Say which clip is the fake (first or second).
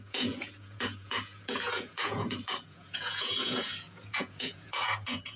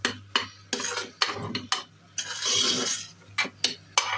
first